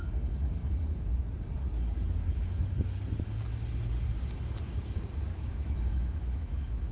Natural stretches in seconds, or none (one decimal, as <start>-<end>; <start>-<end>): 0.0-5.3